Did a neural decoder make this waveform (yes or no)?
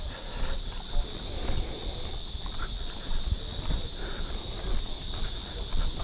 no